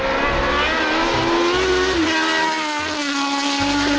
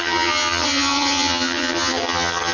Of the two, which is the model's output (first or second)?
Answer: second